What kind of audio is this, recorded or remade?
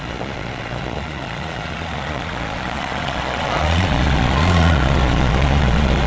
remade